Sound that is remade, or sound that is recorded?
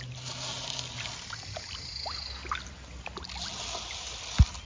recorded